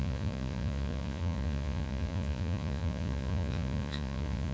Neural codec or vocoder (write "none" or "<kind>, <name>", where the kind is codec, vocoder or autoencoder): vocoder, Vocos